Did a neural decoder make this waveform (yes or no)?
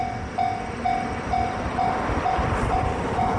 no